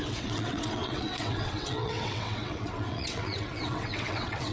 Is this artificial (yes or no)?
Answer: yes